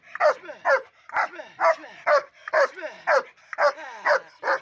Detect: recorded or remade recorded